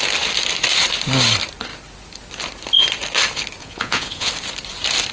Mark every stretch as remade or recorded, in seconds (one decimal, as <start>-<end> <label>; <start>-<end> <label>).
0.0-3.6 recorded; 3.6-4.3 remade; 4.3-5.1 recorded